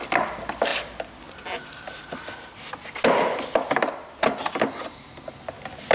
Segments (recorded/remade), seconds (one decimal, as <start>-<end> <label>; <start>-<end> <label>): 0.0-5.9 recorded